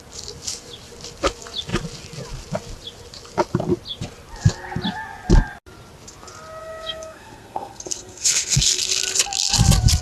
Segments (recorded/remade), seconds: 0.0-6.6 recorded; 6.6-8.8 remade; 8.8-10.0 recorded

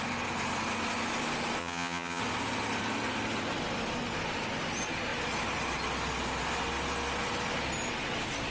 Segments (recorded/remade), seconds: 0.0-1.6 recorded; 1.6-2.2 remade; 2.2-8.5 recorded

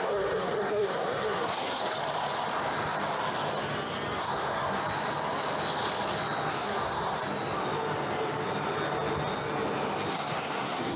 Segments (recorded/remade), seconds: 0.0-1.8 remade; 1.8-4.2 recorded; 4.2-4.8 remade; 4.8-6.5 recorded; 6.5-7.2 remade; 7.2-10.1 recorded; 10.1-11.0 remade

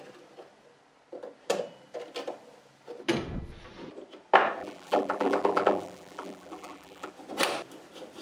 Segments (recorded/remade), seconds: 0.0-4.6 recorded; 4.6-7.1 remade; 7.1-8.2 recorded

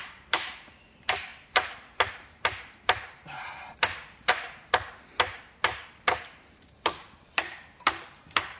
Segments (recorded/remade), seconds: 0.0-8.6 remade

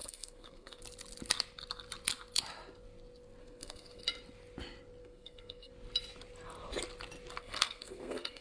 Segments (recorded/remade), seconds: 0.0-0.8 remade; 0.8-3.4 recorded; 3.4-4.0 remade; 4.0-5.0 recorded; 5.0-5.7 remade; 5.7-7.4 recorded; 7.4-8.4 remade